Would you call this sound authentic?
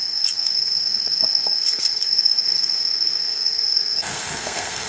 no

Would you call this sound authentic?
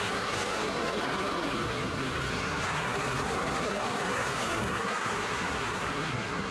no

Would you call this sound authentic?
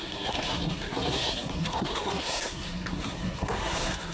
no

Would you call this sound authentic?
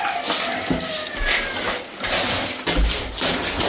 yes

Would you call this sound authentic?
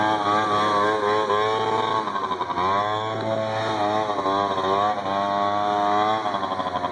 yes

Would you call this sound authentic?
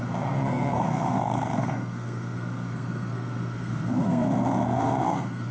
no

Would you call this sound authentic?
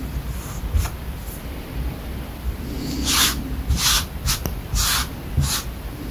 yes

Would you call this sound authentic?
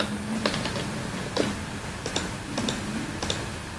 yes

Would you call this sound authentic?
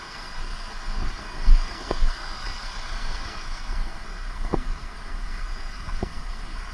no